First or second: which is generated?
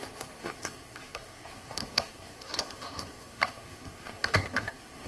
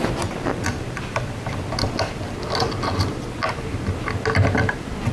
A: first